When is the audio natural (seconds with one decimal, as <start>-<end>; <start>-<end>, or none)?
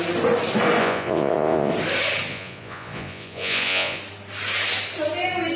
0.0-0.8; 1.7-2.3; 4.0-5.6